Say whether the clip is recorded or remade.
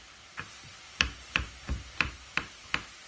recorded